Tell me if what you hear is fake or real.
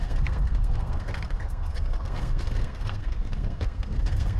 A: fake